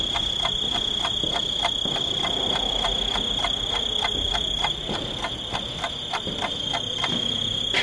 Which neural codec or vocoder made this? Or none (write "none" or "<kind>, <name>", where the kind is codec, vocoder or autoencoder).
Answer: none